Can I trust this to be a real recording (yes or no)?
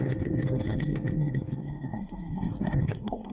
no